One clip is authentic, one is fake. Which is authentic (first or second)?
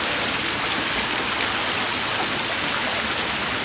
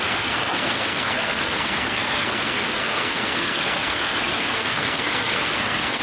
first